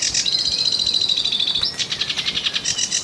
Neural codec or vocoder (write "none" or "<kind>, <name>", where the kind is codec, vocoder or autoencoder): none